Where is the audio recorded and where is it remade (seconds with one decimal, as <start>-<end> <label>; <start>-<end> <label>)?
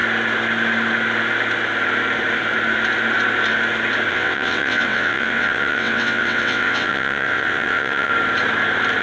0.0-4.1 recorded; 4.1-8.1 remade; 8.1-9.0 recorded